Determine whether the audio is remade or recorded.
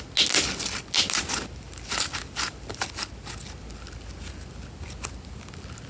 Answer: recorded